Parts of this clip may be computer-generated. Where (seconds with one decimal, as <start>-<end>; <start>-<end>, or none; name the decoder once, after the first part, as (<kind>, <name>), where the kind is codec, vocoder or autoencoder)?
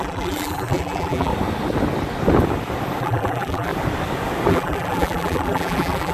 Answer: 0.0-1.3 (vocoder, BigVGAN v2); 3.0-3.7; 4.5-6.1